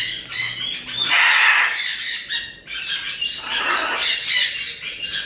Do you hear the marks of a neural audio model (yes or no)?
no